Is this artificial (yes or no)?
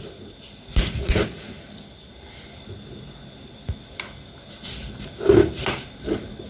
no